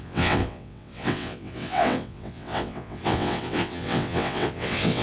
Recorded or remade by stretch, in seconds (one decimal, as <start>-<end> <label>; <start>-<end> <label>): 0.0-5.0 remade